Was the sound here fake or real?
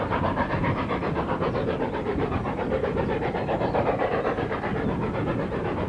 fake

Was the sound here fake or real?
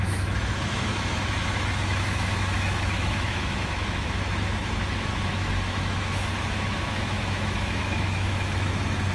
fake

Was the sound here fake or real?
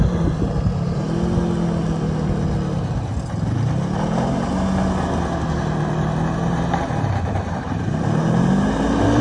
real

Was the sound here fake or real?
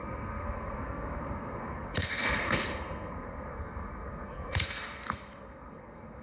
fake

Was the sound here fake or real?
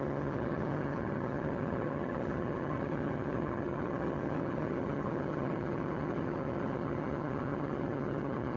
fake